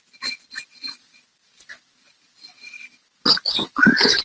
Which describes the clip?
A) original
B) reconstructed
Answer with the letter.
A